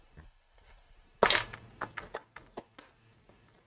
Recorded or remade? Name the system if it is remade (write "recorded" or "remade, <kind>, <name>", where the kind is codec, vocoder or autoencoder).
recorded